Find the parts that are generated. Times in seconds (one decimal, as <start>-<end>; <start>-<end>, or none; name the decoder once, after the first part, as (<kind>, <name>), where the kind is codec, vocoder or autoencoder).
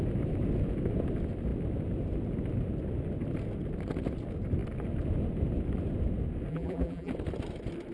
6.5-7.1 (vocoder, BigVGAN v2)